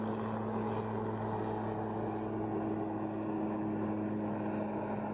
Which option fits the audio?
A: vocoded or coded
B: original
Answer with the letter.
B